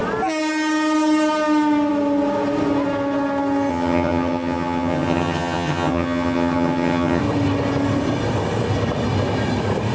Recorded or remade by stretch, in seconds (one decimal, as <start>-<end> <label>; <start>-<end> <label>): 0.0-3.7 recorded; 3.7-7.2 remade; 7.2-9.9 recorded